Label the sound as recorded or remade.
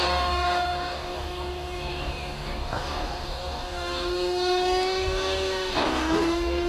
remade